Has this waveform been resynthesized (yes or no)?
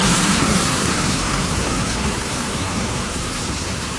yes